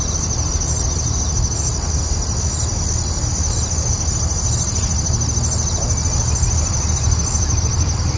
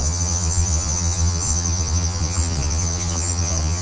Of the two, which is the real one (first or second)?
first